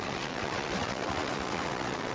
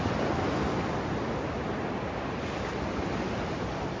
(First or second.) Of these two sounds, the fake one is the first